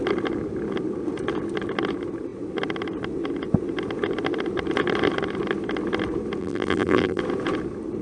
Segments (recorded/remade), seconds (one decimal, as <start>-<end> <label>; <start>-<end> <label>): 0.0-6.4 recorded; 6.4-7.2 remade; 7.2-8.0 recorded